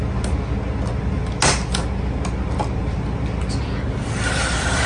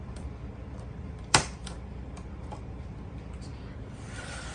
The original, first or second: first